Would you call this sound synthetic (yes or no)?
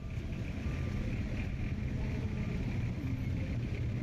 no